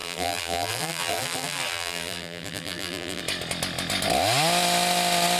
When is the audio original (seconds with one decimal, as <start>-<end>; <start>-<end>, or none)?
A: 3.2-5.4